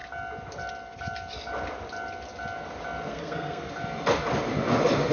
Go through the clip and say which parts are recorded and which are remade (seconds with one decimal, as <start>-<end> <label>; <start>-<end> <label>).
0.0-3.1 recorded; 3.1-3.7 remade; 3.7-5.1 recorded